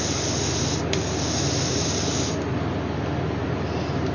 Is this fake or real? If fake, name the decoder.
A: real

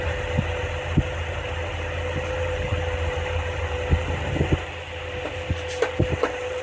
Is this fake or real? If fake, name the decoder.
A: real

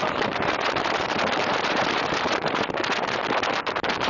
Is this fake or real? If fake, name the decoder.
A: fake, vocoder, BigVGAN v2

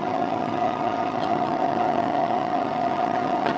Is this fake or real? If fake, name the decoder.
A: fake, vocoder, HiFi-GAN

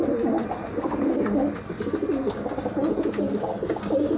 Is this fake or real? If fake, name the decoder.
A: real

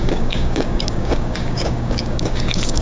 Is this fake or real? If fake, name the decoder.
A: fake, codec, DAC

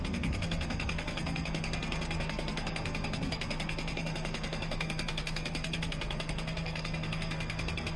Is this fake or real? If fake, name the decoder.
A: fake, codec, SNAC